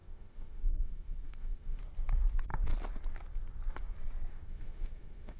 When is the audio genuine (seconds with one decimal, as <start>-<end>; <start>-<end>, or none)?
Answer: 1.8-4.3